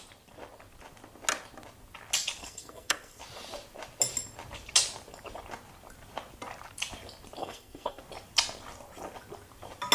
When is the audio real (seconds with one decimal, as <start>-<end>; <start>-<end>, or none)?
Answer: 0.0-2.4; 3.2-7.4; 8.0-9.9